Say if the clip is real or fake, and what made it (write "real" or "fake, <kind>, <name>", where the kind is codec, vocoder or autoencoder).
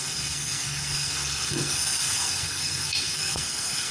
fake, codec, SNAC